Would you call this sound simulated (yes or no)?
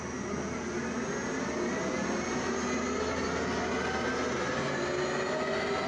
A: no